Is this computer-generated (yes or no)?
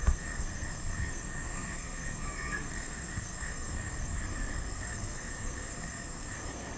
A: yes